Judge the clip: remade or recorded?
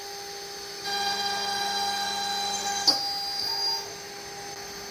recorded